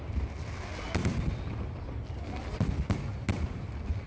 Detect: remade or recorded recorded